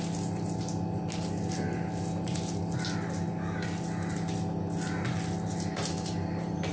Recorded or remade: recorded